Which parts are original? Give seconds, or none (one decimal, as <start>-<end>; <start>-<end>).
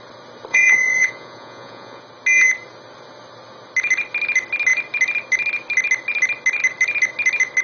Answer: 0.0-0.5; 2.0-7.6